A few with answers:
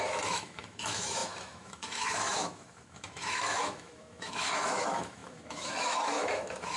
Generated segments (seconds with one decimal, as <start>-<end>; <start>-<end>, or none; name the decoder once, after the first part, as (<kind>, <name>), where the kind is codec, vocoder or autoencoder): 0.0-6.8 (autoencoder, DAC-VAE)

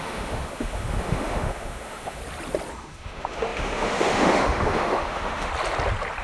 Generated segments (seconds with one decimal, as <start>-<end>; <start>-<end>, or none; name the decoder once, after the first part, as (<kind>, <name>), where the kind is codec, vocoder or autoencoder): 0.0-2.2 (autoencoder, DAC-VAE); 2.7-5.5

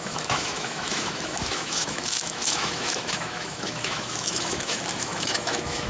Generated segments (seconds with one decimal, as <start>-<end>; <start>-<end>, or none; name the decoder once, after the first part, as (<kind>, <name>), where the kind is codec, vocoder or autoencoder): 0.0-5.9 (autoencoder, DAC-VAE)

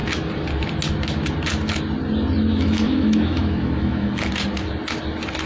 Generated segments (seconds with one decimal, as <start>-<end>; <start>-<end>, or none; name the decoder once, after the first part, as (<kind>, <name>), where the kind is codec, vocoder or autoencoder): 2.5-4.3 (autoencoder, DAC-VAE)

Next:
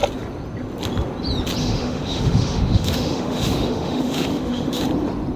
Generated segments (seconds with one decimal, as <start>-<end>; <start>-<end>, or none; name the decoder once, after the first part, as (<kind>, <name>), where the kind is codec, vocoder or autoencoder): 1.6-4.8 (autoencoder, DAC-VAE)

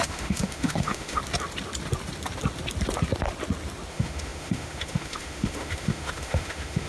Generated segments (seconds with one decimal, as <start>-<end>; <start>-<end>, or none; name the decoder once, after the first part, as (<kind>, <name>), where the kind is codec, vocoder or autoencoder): 0.0-1.2 (autoencoder, DAC-VAE); 3.9-6.9

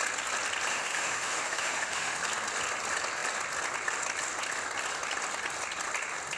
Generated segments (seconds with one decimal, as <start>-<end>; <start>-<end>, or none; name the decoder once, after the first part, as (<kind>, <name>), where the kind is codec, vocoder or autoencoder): 0.7-2.2 (autoencoder, DAC-VAE)

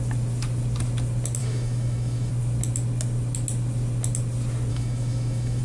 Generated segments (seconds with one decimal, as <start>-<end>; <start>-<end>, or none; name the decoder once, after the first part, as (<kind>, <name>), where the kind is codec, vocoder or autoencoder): 1.4-2.3 (autoencoder, DAC-VAE); 4.7-5.6